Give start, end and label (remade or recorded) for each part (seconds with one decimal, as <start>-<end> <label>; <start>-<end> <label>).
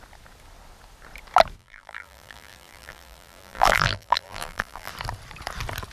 0.0-1.6 recorded; 1.6-4.9 remade; 4.9-5.9 recorded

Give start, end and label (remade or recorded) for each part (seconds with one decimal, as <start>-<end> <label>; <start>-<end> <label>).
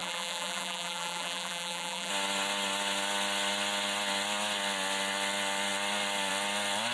0.0-2.1 remade; 2.1-6.9 recorded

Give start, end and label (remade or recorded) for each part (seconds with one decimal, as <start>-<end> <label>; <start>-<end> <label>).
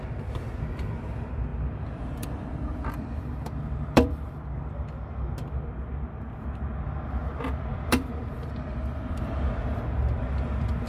0.0-1.5 recorded; 1.5-4.6 remade; 4.6-7.2 recorded; 7.2-9.5 remade; 9.5-10.9 recorded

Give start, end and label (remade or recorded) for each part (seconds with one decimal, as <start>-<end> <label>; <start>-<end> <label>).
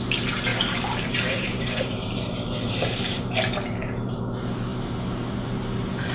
0.0-0.5 recorded; 0.5-4.2 remade; 4.2-4.7 recorded; 4.7-6.1 remade